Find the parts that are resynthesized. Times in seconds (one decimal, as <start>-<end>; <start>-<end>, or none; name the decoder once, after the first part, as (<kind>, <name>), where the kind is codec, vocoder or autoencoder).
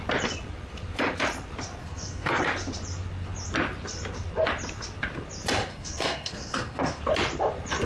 1.8-2.4 (codec, SNAC); 5.7-7.0